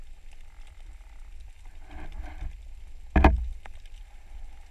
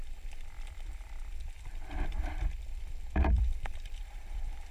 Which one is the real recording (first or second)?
first